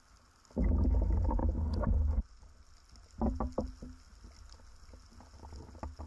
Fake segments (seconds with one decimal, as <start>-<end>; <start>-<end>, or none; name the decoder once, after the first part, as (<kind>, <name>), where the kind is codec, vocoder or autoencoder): none

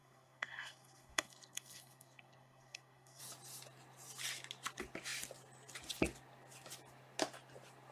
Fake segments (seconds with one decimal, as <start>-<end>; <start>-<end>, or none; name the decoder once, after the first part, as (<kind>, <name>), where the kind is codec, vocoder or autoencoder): 0.0-3.2 (codec, SNAC)

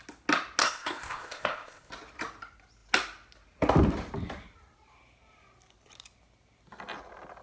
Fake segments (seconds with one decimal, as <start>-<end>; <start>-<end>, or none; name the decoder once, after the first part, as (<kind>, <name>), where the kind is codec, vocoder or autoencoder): 0.6-1.9 (codec, ZipCodec)

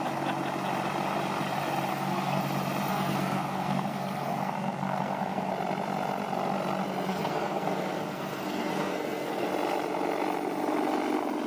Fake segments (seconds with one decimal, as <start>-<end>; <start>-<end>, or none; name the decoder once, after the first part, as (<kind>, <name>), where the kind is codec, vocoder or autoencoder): 1.9-2.4 (codec, SNAC); 2.9-5.5; 7.1-9.5